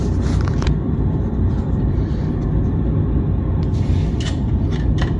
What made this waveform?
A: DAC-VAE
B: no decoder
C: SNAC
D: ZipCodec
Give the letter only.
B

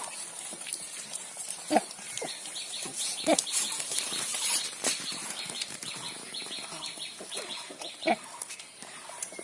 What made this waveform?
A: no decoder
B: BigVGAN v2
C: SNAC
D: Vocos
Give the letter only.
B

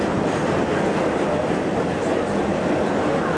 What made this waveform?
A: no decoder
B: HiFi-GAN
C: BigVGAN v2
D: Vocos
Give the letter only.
C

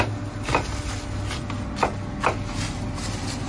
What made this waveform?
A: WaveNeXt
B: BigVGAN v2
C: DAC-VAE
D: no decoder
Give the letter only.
D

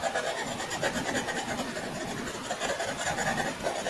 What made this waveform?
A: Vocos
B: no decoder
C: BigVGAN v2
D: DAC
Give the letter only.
B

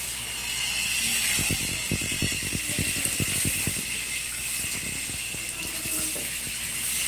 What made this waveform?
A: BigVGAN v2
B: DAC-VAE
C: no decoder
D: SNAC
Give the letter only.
C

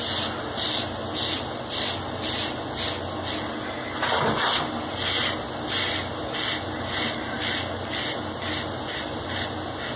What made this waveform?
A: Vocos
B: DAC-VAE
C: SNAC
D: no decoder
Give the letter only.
D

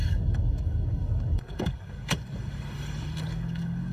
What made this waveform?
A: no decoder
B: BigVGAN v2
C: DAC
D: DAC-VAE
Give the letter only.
C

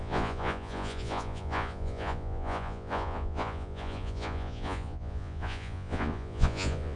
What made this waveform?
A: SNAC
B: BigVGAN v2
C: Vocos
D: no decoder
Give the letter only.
C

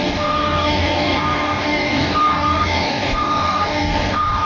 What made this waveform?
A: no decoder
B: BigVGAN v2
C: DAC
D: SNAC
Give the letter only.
C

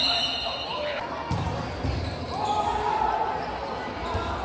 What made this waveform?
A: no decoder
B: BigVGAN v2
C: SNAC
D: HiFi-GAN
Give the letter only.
A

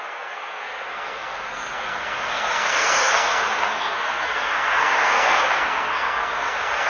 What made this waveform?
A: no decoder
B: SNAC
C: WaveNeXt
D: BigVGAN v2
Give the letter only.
B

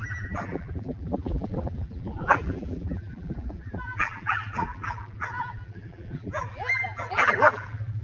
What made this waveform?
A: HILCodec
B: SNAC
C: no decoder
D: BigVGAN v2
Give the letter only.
D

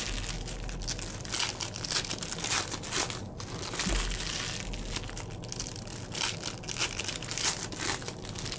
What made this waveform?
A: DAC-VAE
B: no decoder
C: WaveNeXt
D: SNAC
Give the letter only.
B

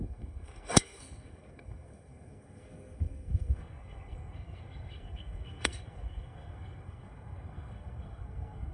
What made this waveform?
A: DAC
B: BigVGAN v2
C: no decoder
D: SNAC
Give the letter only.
D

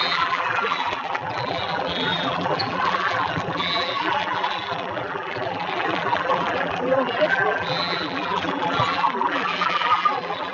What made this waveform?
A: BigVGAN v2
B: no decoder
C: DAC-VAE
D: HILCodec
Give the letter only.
A